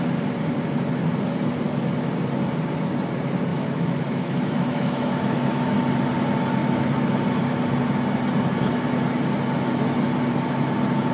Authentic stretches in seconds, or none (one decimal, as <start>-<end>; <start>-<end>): 0.0-3.5; 5.5-6.6; 7.2-11.1